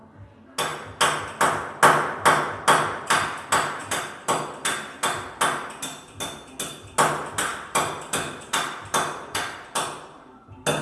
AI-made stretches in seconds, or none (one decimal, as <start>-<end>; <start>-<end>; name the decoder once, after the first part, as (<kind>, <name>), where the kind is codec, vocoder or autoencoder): 3.8-4.4 (vocoder, BigVGAN v2); 7.5-10.4